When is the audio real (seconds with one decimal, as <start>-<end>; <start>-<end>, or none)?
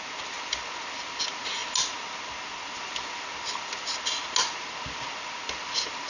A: 0.0-6.1